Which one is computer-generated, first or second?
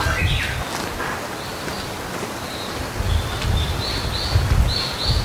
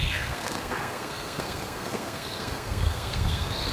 second